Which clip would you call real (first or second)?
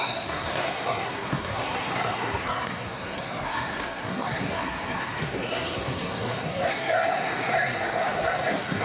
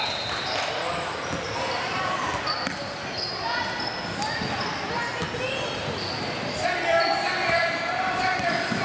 second